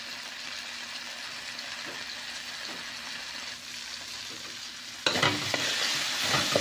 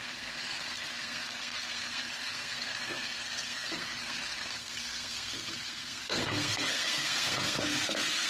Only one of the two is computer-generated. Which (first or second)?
second